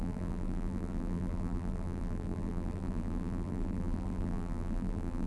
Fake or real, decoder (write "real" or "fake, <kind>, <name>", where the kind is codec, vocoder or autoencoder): fake, vocoder, BigVGAN v2